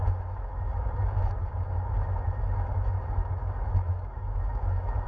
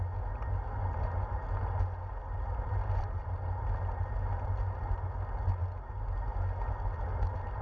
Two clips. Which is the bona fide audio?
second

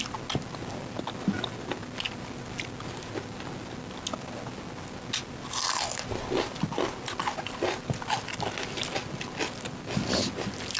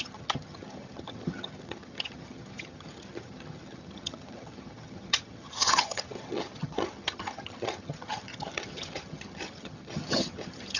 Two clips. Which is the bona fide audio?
first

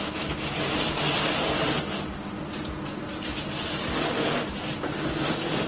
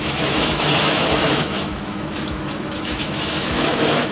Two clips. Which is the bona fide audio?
first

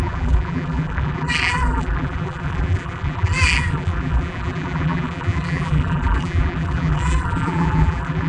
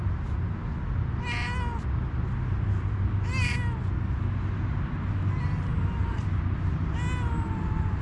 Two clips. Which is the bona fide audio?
second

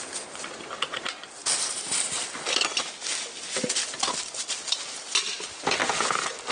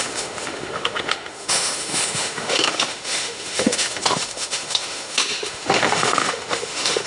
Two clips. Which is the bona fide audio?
first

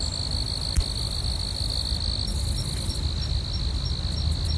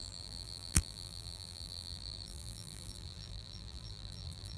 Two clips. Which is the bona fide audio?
first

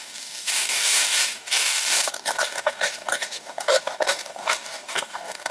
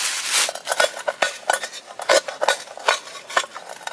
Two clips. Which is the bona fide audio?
second